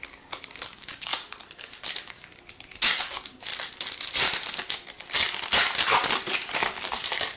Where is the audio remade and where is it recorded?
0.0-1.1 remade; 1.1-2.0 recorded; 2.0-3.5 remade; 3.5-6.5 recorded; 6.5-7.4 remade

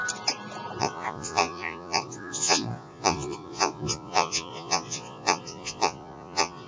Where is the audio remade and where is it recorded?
0.0-0.8 recorded; 0.8-6.7 remade

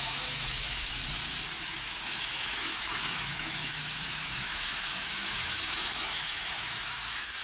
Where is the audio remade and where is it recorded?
0.0-0.9 remade; 0.9-1.6 recorded; 1.6-7.4 remade